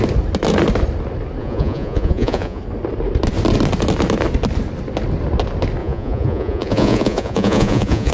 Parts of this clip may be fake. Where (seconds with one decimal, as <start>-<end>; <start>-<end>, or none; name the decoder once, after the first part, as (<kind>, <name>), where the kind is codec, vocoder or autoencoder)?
1.4-2.6 (vocoder, Vocos); 5.8-8.1